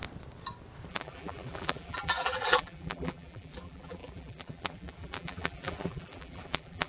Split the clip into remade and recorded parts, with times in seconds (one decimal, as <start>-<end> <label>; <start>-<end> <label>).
0.0-0.9 recorded; 0.9-6.9 remade